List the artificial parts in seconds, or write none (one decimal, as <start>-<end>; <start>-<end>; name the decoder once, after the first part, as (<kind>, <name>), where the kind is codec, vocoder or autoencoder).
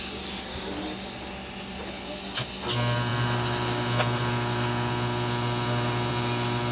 none